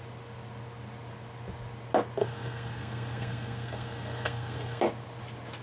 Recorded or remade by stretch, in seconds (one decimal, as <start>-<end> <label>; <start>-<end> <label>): 0.0-2.2 recorded; 2.2-4.8 remade; 4.8-5.6 recorded